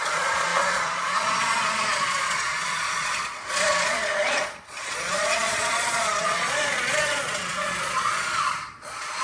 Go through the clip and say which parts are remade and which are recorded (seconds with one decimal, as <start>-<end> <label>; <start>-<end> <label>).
0.0-9.2 remade